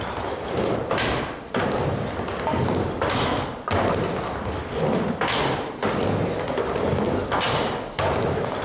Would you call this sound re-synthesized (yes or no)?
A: no